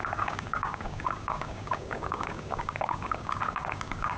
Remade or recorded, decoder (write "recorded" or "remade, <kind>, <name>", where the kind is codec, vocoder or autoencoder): remade, codec, DAC